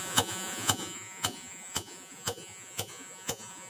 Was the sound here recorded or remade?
remade